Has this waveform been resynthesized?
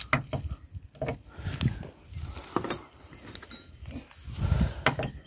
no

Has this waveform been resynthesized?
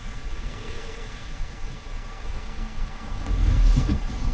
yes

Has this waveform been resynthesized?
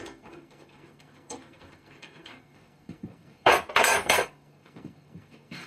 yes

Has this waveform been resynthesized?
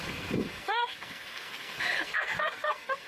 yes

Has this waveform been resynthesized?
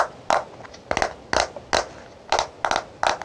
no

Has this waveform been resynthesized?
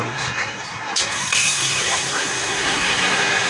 yes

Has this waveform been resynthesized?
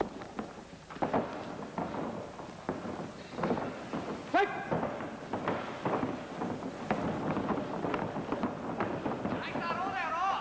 no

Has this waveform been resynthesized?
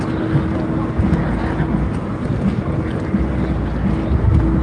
no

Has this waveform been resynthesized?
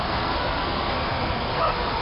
yes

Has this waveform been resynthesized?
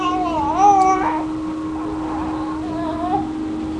no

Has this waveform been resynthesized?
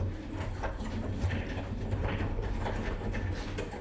no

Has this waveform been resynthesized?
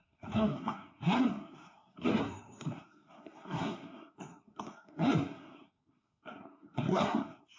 yes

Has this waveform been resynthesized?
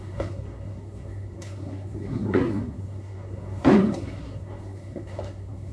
yes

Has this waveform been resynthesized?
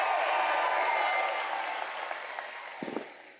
no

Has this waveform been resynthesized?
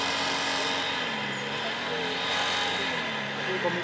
no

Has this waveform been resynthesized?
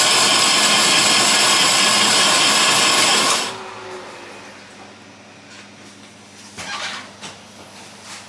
no